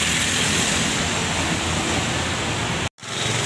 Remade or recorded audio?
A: recorded